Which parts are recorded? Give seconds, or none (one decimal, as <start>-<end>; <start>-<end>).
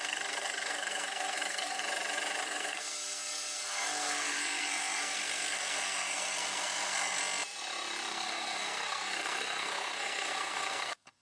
1.8-2.4; 7.2-8.1